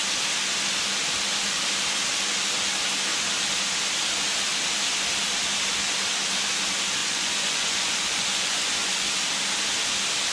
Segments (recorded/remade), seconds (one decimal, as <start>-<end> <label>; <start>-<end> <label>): 0.0-7.0 recorded; 7.0-9.1 remade; 9.1-10.3 recorded